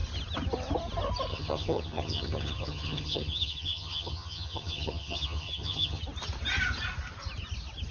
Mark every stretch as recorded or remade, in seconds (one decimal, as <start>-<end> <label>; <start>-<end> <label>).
0.0-1.3 recorded; 1.3-6.0 remade; 6.0-7.9 recorded